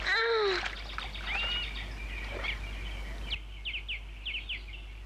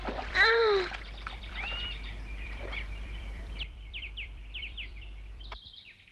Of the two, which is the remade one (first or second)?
second